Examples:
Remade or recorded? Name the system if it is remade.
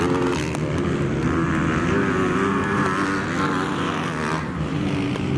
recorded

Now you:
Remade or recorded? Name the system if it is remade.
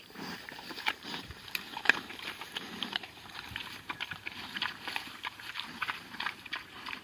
remade, vocoder, BigVGAN v2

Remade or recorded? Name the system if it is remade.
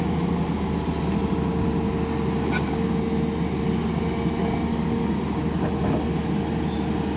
recorded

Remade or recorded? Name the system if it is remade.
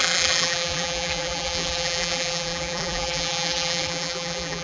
remade, vocoder, BigVGAN v2